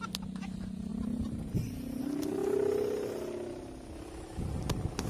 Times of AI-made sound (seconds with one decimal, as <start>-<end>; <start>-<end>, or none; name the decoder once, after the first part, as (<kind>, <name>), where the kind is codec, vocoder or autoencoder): 0.9-2.0 (vocoder, BigVGAN v2)